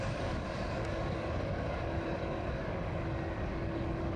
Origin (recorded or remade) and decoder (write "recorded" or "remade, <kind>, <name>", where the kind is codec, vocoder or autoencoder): remade, codec, DAC